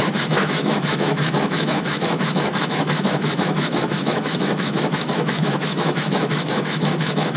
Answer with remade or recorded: remade